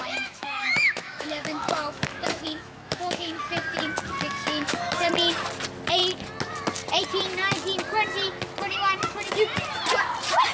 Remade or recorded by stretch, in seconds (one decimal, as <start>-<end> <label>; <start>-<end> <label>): 0.0-3.4 remade; 3.4-4.4 recorded; 4.4-5.1 remade; 5.1-10.5 recorded